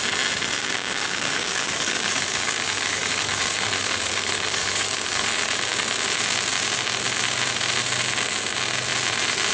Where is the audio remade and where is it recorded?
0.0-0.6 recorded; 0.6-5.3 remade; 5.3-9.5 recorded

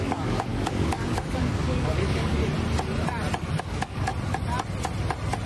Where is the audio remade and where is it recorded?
0.0-2.4 remade; 2.4-3.6 recorded; 3.6-4.1 remade; 4.1-5.5 recorded